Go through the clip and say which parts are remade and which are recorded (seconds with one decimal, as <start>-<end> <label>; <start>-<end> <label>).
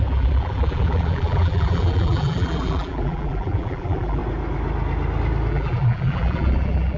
0.0-4.2 remade; 4.2-5.5 recorded; 5.5-7.0 remade